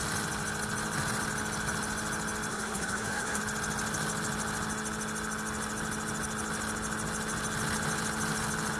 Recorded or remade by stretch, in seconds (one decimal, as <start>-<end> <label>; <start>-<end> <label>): 0.0-2.5 recorded; 2.5-3.4 remade; 3.4-8.8 recorded